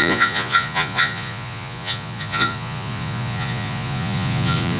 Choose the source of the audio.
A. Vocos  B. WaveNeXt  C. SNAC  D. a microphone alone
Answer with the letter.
A